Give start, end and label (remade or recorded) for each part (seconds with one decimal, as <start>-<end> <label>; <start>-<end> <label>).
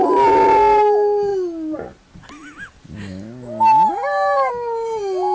0.0-5.3 recorded